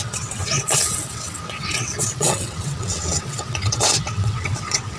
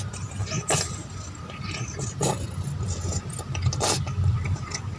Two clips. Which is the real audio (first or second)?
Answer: second